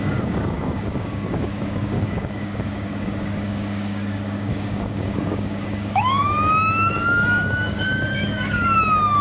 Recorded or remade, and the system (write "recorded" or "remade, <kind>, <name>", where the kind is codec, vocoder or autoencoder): remade, codec, DAC